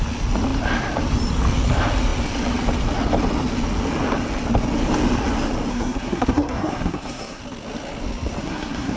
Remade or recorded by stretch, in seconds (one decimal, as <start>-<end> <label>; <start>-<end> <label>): 0.0-5.7 recorded; 5.7-7.4 remade; 7.4-8.4 recorded; 8.4-9.0 remade